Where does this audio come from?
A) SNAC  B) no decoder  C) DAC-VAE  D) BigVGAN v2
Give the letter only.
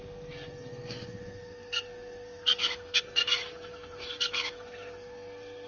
A